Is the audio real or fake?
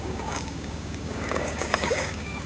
fake